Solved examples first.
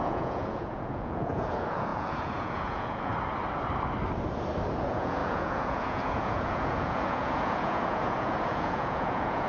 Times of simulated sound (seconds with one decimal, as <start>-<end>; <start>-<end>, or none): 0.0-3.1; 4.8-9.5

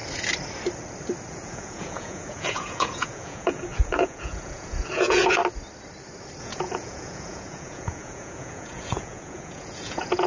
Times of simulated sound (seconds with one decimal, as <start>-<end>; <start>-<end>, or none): 1.3-5.4; 6.4-10.3

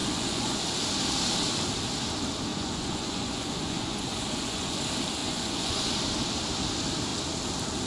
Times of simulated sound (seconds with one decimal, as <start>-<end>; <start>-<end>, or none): 0.0-0.6; 2.5-4.8; 5.2-5.9

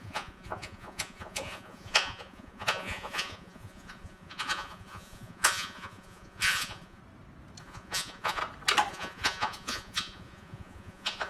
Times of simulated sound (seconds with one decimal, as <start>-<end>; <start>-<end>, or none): 0.0-7.0; 7.6-8.4; 8.9-11.3

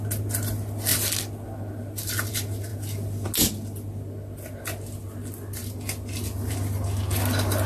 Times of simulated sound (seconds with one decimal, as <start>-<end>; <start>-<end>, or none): none